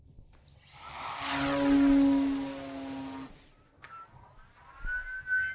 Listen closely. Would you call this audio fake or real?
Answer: real